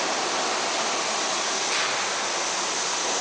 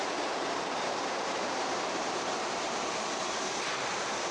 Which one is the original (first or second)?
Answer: first